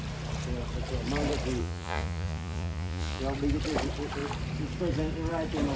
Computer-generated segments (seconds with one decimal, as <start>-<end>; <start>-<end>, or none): 1.6-3.2